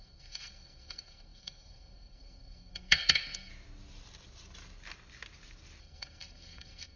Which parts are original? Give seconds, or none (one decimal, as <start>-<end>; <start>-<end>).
3.5-5.8